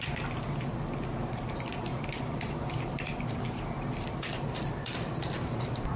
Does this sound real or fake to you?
real